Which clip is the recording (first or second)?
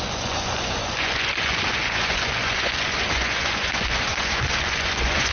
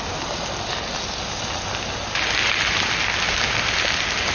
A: second